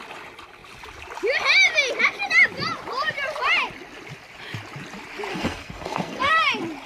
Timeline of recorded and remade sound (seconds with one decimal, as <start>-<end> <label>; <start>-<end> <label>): 0.0-5.3 recorded; 5.3-6.3 remade; 6.3-6.9 recorded